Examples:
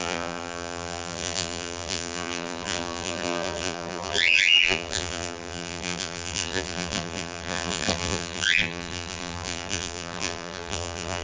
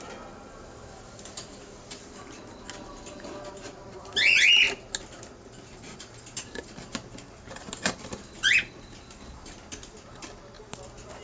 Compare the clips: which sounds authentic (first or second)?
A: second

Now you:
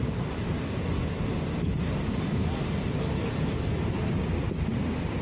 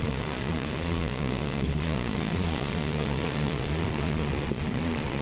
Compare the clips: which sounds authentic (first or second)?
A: first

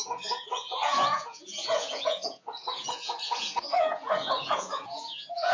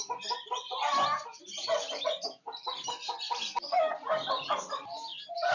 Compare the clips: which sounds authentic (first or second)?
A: second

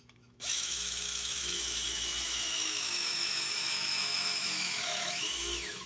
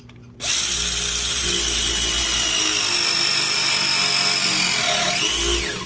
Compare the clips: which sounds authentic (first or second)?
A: second